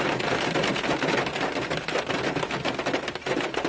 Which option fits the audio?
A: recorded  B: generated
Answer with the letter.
A